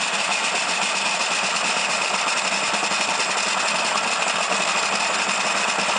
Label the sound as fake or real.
real